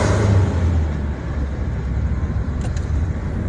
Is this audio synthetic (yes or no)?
no